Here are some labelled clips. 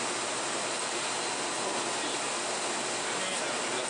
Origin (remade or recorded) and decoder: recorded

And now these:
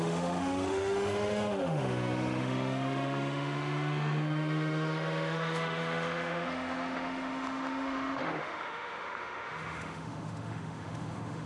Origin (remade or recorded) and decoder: remade, autoencoder, DAC-VAE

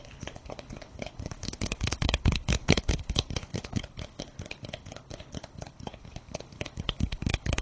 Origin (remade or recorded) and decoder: remade, codec, HILCodec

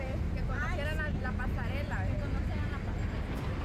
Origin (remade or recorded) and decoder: recorded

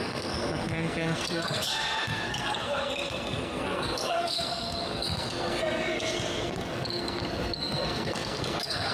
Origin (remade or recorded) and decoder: remade, codec, SNAC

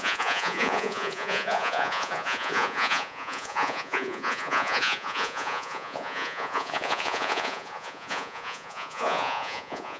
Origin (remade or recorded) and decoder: remade, vocoder, Vocos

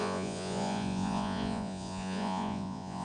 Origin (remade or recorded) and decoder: remade, vocoder, Vocos